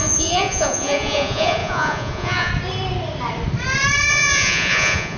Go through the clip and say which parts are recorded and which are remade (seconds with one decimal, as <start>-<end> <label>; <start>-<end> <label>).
0.0-2.5 remade; 2.5-4.1 recorded; 4.1-5.2 remade